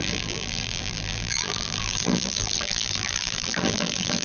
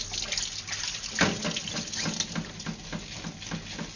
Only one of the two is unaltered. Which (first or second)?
second